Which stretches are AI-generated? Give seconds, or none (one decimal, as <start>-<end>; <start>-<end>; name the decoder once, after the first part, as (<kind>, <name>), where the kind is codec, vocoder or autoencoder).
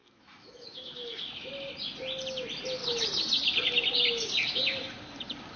0.0-1.5 (autoencoder, DAC-VAE)